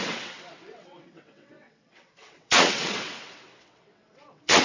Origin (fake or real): fake